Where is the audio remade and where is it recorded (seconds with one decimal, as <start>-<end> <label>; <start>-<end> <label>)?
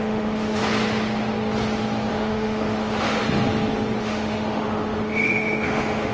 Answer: 0.0-0.6 remade; 0.6-2.1 recorded; 2.1-3.2 remade; 3.2-4.0 recorded; 4.0-6.1 remade